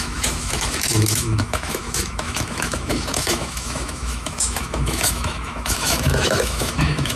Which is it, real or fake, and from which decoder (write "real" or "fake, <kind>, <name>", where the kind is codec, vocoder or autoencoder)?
fake, autoencoder, DAC-VAE